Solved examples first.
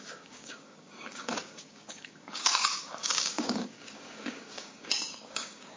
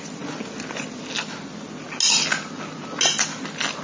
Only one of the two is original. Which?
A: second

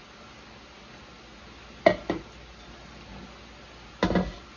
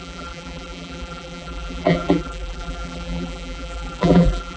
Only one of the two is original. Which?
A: first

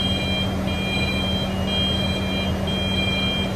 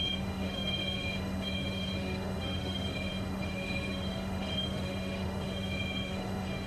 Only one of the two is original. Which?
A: first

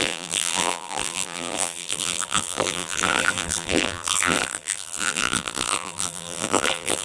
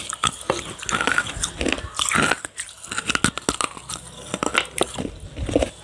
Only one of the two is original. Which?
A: second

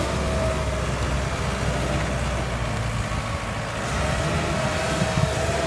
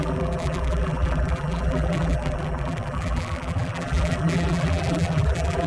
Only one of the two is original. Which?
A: first